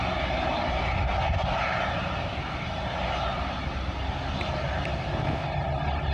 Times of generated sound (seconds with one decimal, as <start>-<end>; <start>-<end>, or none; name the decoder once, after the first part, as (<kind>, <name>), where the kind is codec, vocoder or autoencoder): none

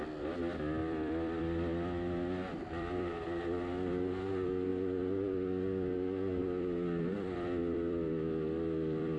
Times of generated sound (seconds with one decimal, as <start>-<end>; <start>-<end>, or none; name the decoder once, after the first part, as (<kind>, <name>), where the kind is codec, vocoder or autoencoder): 0.8-3.4 (vocoder, BigVGAN v2); 7.1-9.2

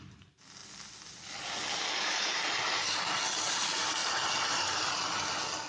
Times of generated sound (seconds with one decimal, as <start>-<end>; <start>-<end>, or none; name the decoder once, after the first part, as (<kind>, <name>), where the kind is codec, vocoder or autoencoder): 4.0-4.9 (vocoder, BigVGAN v2)

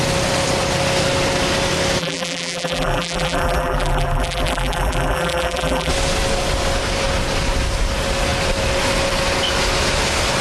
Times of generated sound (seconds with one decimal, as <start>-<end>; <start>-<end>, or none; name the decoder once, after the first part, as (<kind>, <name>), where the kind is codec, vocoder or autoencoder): 2.0-5.9 (vocoder, BigVGAN v2)

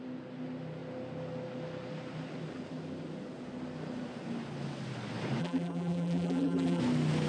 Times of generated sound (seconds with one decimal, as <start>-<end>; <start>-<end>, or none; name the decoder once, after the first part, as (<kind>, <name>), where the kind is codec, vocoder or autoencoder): 5.4-6.8 (vocoder, BigVGAN v2)